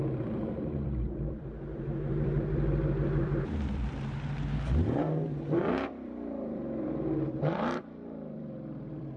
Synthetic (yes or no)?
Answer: yes